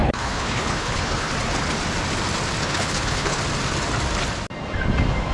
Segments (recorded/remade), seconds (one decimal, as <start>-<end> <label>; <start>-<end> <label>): 0.0-1.3 remade; 1.3-2.6 recorded; 2.6-3.4 remade; 3.4-5.3 recorded